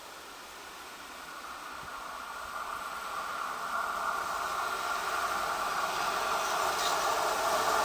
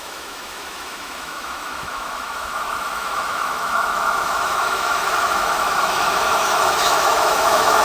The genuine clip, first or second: first